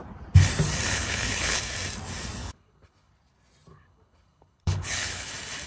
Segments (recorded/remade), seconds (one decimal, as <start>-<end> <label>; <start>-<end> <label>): 0.0-0.9 recorded; 0.9-1.6 remade; 1.6-2.4 recorded; 2.4-3.1 remade; 3.1-3.7 recorded; 3.7-5.3 remade; 5.3-5.7 recorded